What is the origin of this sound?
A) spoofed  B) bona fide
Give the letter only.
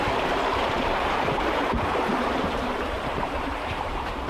A